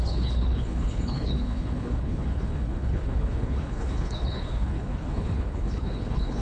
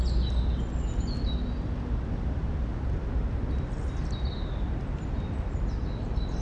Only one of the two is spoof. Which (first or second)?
first